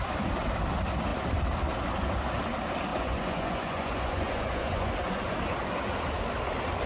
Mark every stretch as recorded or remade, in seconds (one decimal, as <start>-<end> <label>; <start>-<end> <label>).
0.0-2.9 recorded; 2.9-4.9 remade; 4.9-6.9 recorded